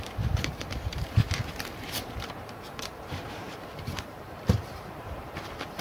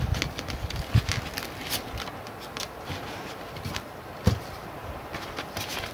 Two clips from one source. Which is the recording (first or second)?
second